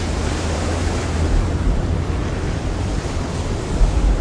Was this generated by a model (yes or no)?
yes